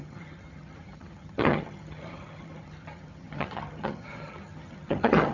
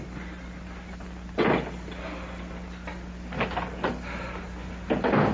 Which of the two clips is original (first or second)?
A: second